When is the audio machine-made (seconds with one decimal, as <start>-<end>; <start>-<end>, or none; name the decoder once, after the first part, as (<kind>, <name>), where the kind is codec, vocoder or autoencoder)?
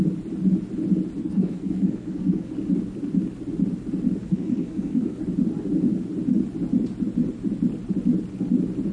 1.2-2.5 (codec, SNAC); 4.2-5.2